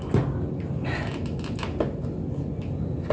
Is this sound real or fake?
real